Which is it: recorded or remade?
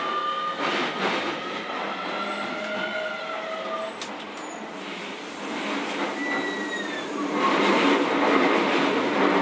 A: recorded